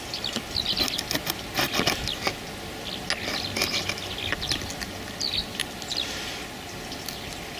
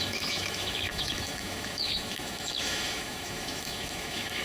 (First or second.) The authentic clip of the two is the first